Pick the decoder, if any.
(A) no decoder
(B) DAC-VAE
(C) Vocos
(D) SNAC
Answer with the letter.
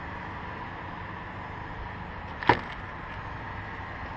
A